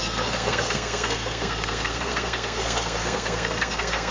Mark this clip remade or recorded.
remade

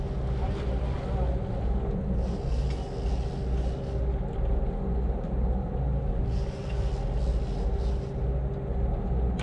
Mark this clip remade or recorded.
recorded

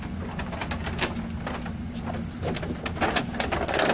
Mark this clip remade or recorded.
recorded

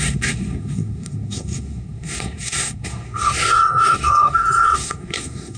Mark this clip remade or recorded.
remade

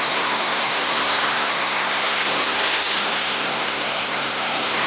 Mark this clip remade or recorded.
remade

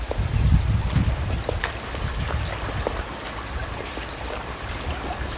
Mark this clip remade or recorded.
recorded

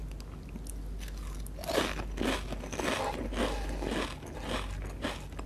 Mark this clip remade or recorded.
recorded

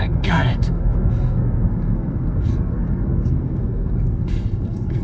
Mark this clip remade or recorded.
remade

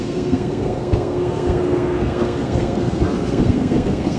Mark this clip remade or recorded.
remade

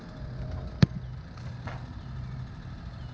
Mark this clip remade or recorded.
recorded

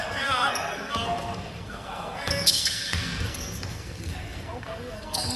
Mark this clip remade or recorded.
remade